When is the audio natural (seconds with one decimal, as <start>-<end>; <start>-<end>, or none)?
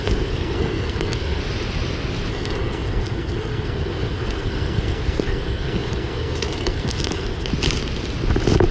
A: 1.4-2.3; 7.5-8.7